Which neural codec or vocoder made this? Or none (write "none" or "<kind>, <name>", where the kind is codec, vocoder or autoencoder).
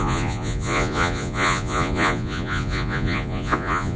vocoder, Vocos